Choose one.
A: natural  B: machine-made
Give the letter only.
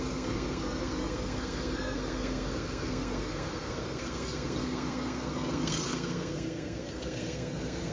B